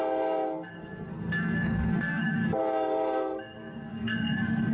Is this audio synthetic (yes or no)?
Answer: yes